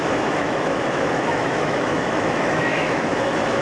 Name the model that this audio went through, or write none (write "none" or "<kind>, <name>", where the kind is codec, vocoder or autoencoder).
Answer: autoencoder, DAC-VAE